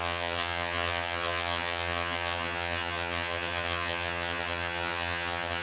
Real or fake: fake